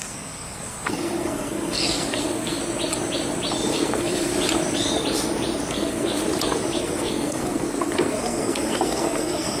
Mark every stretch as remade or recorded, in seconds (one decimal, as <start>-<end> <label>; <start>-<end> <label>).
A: 0.0-2.6 remade; 2.6-3.7 recorded; 3.7-4.3 remade; 4.3-5.7 recorded; 5.7-6.2 remade; 6.2-6.8 recorded; 6.8-9.6 remade